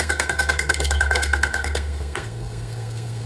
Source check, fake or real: fake